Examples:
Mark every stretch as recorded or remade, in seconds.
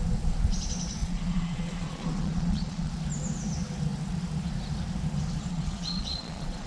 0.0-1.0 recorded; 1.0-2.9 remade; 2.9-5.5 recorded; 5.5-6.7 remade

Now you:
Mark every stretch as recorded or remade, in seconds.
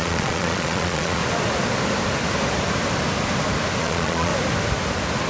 0.0-1.2 remade; 1.2-3.8 recorded; 3.8-4.3 remade; 4.3-5.3 recorded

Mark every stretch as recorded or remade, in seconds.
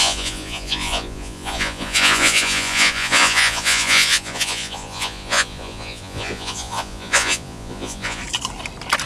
0.0-8.2 remade; 8.2-9.1 recorded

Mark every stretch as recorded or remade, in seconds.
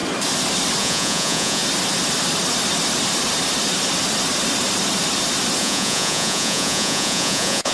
0.0-0.8 recorded; 0.8-1.6 remade; 1.6-5.6 recorded; 5.6-7.7 remade